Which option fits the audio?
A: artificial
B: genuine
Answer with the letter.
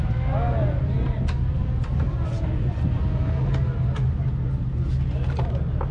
B